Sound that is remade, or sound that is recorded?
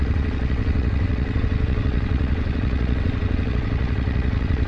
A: remade